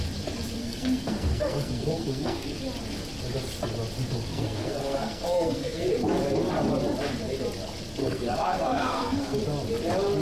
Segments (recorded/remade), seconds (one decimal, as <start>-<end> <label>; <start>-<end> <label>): 0.0-0.6 recorded; 0.6-2.6 remade; 2.6-4.3 recorded; 4.3-5.9 remade; 5.9-8.0 recorded; 8.0-9.4 remade; 9.4-10.2 recorded